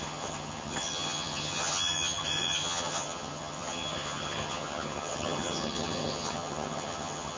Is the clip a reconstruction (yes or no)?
yes